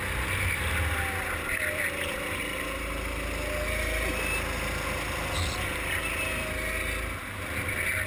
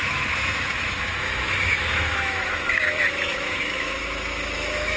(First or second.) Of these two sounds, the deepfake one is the second